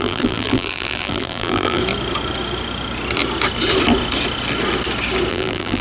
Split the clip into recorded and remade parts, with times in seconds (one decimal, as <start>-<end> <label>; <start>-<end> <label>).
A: 0.0-1.8 remade; 1.8-5.3 recorded; 5.3-5.8 remade